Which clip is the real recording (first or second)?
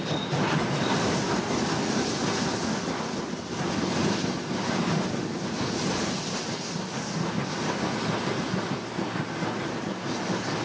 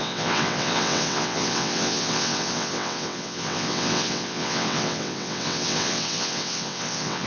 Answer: first